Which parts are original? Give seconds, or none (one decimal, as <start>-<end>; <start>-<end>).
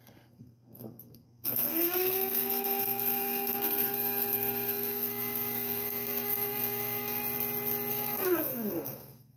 7.2-7.9